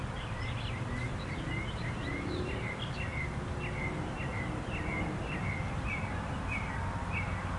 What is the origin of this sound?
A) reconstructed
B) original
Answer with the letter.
B